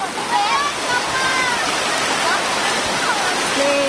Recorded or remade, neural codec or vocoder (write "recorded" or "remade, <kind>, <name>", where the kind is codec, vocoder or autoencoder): recorded